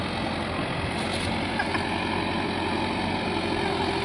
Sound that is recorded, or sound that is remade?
recorded